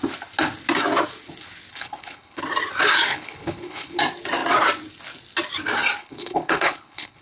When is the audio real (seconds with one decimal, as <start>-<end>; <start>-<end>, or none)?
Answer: 0.0-1.7; 2.4-3.1; 4.0-6.0